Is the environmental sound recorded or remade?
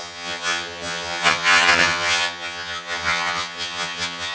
remade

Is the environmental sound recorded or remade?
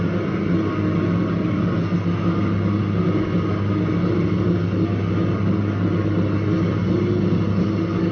recorded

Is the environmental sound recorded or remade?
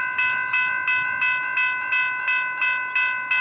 recorded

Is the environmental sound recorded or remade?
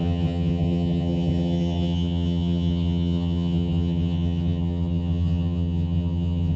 remade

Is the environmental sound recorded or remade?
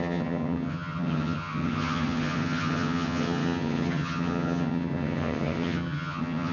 remade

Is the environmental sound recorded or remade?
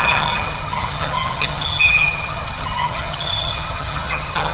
remade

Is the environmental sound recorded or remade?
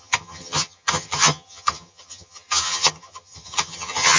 remade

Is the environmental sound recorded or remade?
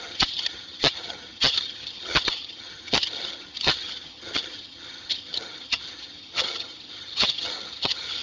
remade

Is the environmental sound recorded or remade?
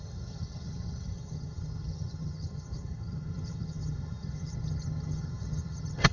remade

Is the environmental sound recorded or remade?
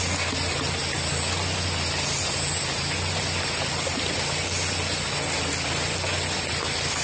recorded